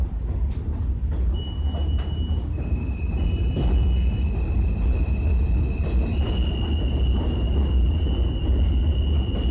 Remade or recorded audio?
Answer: recorded